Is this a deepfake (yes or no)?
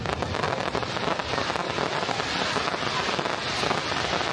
no